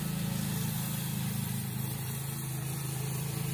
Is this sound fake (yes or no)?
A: yes